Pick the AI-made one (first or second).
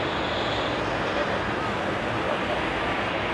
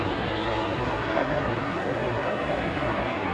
second